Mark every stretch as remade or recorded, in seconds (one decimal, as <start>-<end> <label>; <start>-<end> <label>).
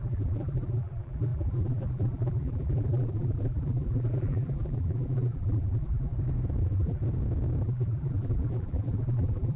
0.0-6.1 remade; 6.1-6.6 recorded; 6.6-7.0 remade; 7.0-7.6 recorded; 7.6-9.6 remade